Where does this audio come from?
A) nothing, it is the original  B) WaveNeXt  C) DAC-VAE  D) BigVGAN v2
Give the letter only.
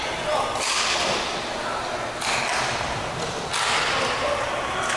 A